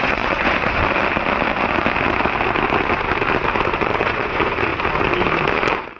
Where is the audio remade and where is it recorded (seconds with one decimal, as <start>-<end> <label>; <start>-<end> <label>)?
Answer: 0.0-0.8 remade; 0.8-3.7 recorded; 3.7-4.7 remade; 4.7-5.5 recorded; 5.5-6.0 remade